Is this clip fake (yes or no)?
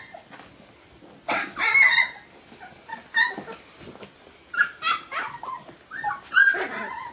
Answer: no